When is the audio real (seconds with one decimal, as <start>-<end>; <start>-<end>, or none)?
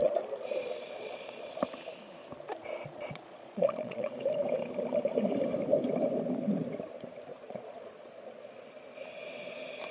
1.5-2.6; 4.1-7.3; 8.7-9.9